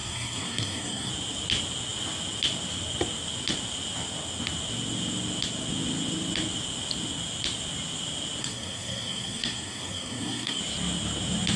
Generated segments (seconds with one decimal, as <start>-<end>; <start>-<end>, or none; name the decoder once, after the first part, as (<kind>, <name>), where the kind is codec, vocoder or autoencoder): 0.0-1.1 (codec, SNAC); 8.4-10.6

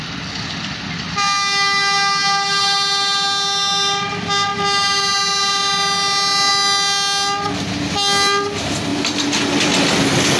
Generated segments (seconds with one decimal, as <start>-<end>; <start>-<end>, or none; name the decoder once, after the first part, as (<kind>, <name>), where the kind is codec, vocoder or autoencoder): none

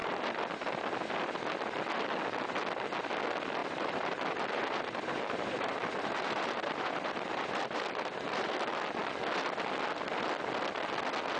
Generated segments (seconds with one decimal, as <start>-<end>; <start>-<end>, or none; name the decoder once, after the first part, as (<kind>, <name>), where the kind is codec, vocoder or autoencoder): 3.6-8.5 (vocoder, BigVGAN v2)

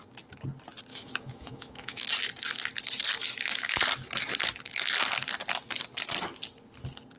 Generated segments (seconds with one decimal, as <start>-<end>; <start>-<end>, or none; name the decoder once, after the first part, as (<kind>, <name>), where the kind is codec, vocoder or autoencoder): 0.9-2.0 (autoencoder, DAC-VAE); 3.2-3.8

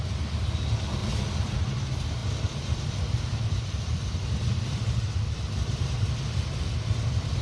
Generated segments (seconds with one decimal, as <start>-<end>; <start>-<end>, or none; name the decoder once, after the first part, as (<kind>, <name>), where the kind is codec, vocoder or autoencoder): 1.0-1.8 (vocoder, BigVGAN v2); 2.2-6.1

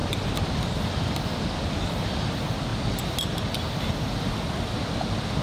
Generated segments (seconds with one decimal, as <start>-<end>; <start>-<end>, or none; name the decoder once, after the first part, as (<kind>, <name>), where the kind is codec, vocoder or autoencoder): none

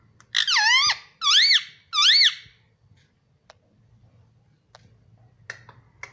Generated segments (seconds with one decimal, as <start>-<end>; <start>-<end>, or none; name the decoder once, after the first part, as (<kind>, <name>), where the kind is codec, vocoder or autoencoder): none

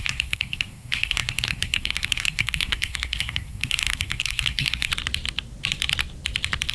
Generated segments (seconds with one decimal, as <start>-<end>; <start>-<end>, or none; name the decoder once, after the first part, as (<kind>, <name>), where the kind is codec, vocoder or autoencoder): 0.0-4.9 (codec, SNAC)